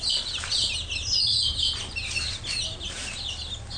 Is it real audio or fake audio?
real